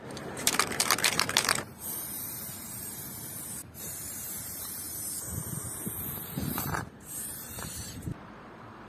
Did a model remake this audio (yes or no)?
yes